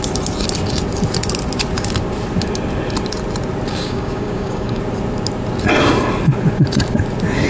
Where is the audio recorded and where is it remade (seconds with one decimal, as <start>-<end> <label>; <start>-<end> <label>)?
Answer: 0.0-3.7 recorded; 3.7-4.8 remade; 4.8-7.5 recorded

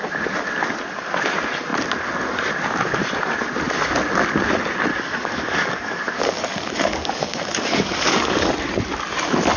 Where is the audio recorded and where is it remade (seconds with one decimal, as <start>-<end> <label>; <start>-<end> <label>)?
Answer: 0.0-4.9 recorded; 4.9-8.5 remade; 8.5-9.6 recorded

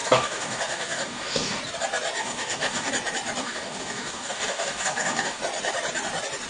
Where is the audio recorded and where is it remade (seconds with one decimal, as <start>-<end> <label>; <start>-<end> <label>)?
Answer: 0.0-1.6 remade; 1.6-2.2 recorded; 2.2-2.9 remade; 2.9-3.4 recorded; 3.4-5.4 remade; 5.4-6.5 recorded

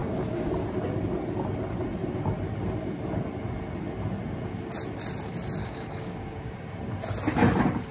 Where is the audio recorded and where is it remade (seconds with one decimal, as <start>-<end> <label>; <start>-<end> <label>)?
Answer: 0.0-0.5 remade; 0.5-5.6 recorded; 5.6-6.5 remade; 6.5-7.9 recorded